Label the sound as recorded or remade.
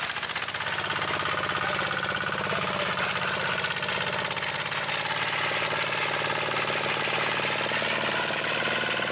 recorded